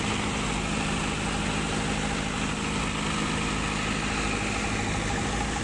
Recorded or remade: recorded